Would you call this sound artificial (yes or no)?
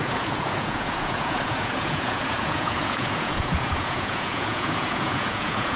yes